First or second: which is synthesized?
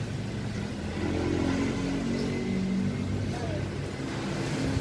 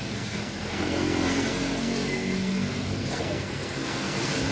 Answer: second